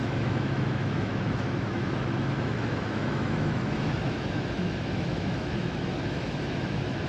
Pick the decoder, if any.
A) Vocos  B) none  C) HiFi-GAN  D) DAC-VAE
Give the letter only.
D